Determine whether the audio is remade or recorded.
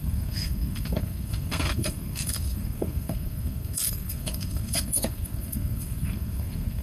remade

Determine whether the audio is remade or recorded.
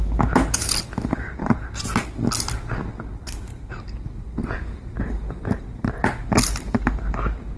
recorded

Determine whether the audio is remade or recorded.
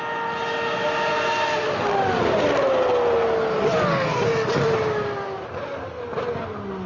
recorded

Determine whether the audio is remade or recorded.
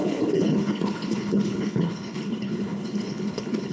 remade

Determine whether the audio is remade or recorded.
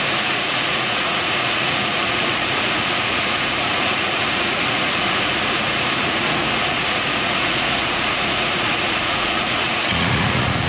remade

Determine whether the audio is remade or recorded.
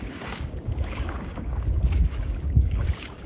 remade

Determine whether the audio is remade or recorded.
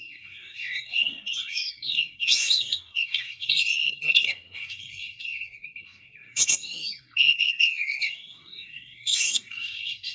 remade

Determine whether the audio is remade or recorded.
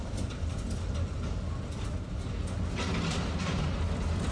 recorded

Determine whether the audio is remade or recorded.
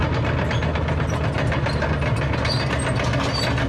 recorded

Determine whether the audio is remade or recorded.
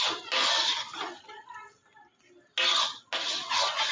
recorded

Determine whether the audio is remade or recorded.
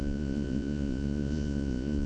remade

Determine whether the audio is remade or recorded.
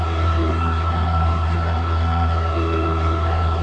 remade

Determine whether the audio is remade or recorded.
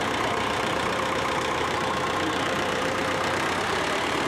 remade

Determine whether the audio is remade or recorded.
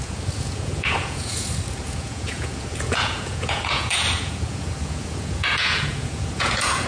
remade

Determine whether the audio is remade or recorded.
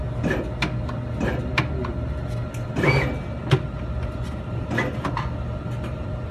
recorded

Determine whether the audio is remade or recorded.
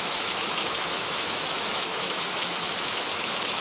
remade